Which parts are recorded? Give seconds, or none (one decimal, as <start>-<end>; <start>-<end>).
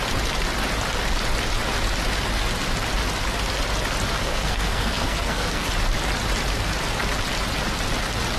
0.0-4.2; 5.7-8.4